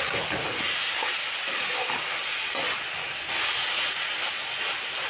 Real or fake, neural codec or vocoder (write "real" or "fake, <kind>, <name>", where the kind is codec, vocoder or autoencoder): real